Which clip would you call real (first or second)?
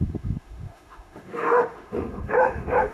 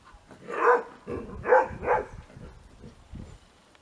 second